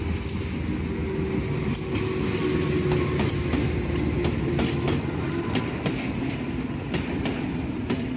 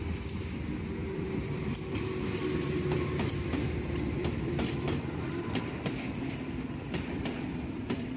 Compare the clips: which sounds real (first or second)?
first